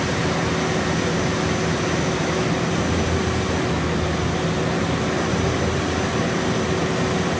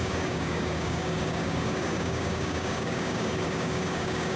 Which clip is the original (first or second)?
first